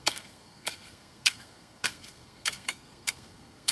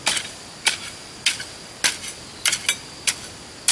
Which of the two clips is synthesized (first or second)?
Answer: first